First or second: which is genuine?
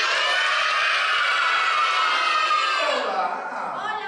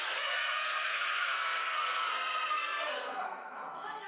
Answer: first